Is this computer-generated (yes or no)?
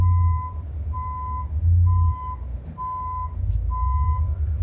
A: no